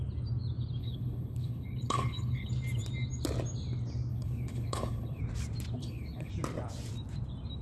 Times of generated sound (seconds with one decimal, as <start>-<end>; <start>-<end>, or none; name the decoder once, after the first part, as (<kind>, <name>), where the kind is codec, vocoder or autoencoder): 0.8-2.5 (codec, HILCodec); 4.1-5.2; 5.8-6.3